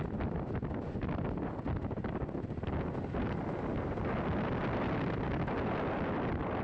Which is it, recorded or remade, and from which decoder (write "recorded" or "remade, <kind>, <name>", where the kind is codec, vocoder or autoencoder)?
recorded